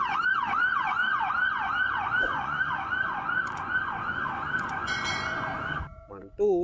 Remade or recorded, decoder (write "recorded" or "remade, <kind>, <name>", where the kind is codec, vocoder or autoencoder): remade, vocoder, Vocos